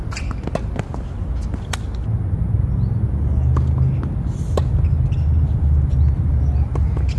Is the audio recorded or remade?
recorded